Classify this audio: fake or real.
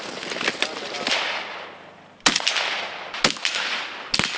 real